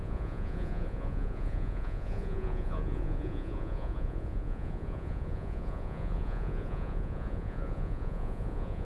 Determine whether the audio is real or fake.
fake